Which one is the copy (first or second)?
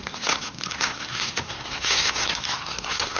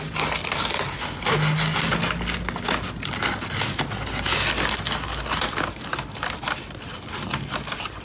first